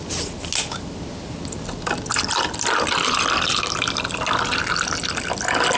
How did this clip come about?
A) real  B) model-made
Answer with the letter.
A